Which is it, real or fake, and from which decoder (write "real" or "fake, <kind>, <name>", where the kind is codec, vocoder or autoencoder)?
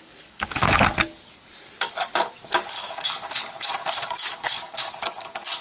fake, codec, DAC